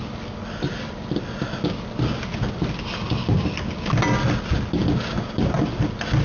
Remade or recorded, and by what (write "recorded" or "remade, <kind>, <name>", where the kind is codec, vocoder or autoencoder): recorded